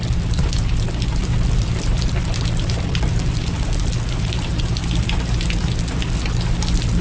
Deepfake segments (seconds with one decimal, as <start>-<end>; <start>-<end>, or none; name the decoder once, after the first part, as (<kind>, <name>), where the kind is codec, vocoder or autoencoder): 1.2-5.4 (vocoder, BigVGAN v2)